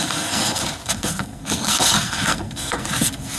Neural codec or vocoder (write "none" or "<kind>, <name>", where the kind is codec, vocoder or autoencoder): codec, SNAC